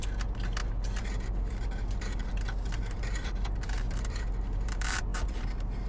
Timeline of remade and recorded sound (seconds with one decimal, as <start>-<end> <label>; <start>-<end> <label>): 0.0-5.9 remade